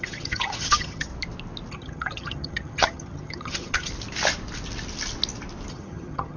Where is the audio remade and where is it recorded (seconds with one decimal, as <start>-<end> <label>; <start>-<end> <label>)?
0.0-1.1 remade; 1.1-1.7 recorded; 1.7-3.9 remade; 3.9-5.7 recorded; 5.7-6.4 remade